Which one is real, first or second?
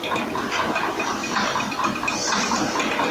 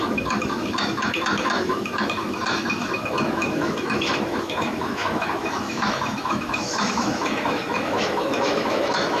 first